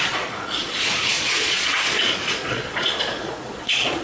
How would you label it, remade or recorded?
remade